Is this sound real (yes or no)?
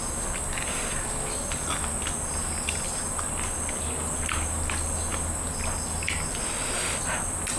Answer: yes